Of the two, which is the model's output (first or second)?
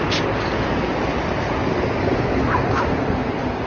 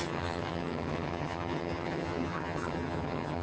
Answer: second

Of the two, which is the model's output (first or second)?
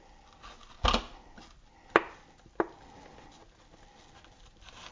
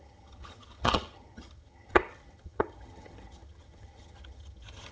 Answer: second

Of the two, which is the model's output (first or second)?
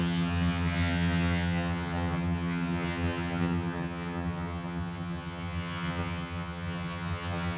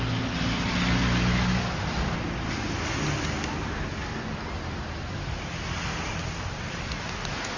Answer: first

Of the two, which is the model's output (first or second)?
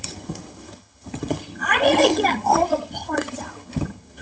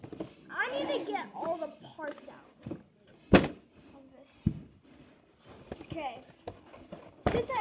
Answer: first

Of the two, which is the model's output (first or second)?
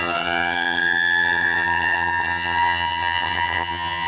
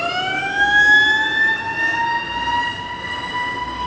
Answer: first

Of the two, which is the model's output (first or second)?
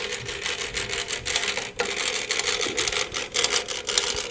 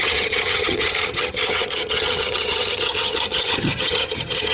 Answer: second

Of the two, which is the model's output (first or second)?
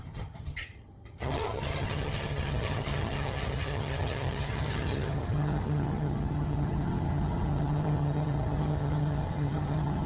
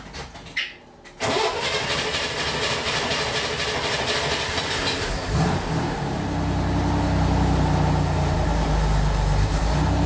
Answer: first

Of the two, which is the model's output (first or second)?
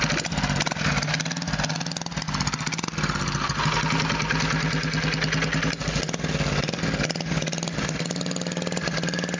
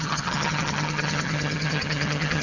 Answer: second